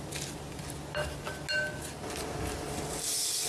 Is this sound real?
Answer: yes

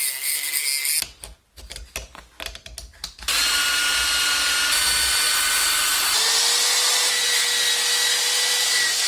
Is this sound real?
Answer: yes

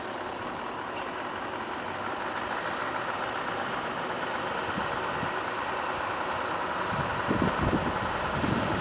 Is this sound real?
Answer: yes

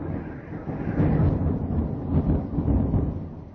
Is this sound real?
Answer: yes